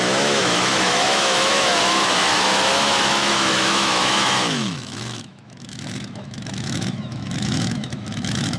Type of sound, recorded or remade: remade